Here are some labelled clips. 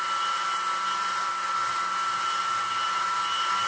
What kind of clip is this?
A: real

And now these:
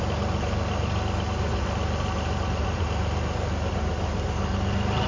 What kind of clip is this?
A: real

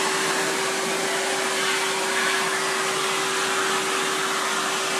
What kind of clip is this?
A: real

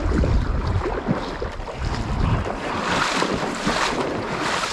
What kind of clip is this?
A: real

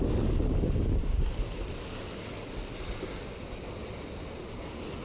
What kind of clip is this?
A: real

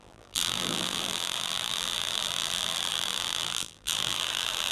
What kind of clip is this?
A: fake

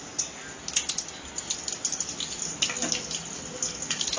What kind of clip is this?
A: real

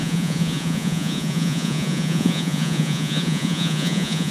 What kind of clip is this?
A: fake